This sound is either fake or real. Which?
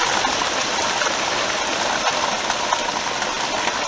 real